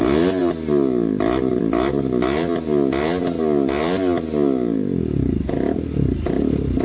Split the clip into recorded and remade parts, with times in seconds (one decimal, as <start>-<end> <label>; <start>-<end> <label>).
0.0-6.8 recorded